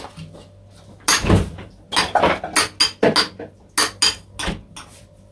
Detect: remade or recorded recorded